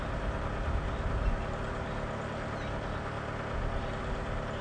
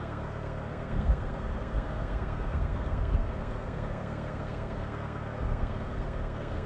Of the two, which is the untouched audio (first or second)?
first